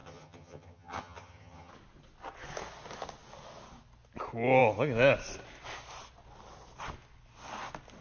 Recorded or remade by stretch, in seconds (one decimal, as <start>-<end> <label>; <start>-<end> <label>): 0.0-1.7 remade; 1.7-8.0 recorded